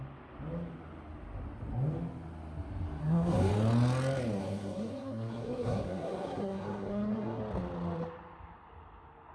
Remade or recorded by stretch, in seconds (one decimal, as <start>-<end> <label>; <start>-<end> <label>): 0.0-3.0 recorded; 3.0-3.5 remade; 3.5-4.4 recorded; 4.4-7.4 remade; 7.4-9.3 recorded